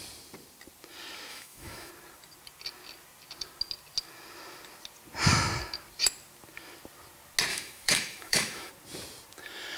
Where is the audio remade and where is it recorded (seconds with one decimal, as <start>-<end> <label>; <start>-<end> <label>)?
0.0-1.3 recorded; 1.3-1.9 remade; 1.9-7.5 recorded; 7.5-8.7 remade; 8.7-9.8 recorded